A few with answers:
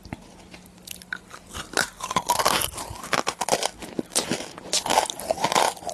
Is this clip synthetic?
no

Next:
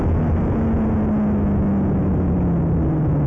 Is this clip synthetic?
no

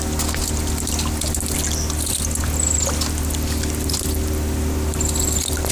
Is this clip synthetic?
no